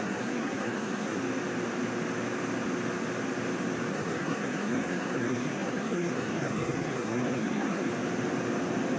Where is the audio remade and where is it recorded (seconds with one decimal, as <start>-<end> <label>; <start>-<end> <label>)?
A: 0.0-1.2 remade; 1.2-3.9 recorded; 3.9-7.9 remade; 7.9-9.0 recorded